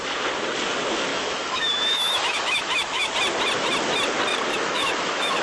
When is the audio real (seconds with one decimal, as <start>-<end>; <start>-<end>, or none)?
0.0-1.1; 3.1-4.5